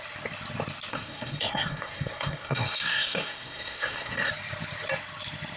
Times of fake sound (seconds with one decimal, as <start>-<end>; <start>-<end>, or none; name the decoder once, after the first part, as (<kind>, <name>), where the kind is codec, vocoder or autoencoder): 0.9-4.3 (codec, SNAC)